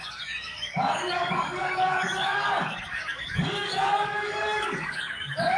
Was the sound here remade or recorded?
remade